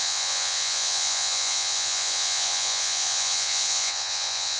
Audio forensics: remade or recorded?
remade